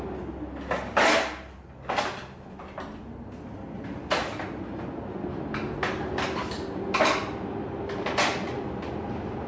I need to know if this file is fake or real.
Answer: real